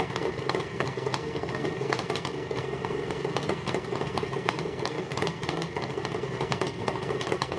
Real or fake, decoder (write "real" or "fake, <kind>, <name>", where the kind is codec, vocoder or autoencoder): fake, codec, SNAC